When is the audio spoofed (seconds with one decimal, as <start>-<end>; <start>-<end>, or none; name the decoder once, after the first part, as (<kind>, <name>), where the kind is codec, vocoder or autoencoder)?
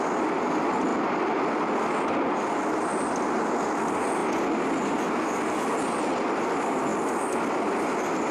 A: none